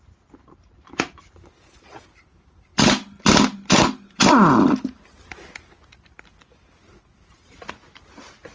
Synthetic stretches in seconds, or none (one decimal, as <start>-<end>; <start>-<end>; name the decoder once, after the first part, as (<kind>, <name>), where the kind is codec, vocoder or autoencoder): none